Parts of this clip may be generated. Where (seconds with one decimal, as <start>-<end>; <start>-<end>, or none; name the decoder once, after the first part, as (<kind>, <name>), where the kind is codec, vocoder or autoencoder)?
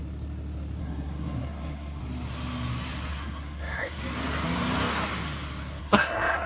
0.8-2.0 (codec, SNAC); 3.1-4.0; 5.8-6.5